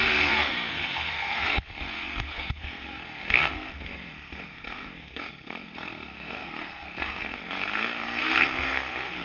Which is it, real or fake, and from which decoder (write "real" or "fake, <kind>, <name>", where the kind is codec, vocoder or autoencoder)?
fake, codec, SNAC